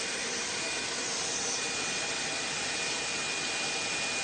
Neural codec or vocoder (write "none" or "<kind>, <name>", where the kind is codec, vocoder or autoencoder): none